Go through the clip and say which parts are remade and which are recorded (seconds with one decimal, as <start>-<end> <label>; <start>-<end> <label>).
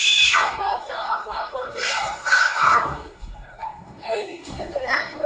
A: 0.0-5.3 remade